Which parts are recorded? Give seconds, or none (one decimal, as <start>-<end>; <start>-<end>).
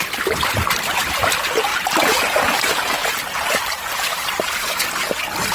0.0-1.7; 5.0-5.5